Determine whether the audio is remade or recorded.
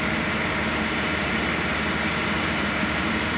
remade